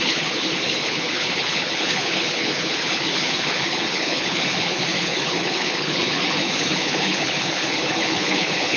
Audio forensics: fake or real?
fake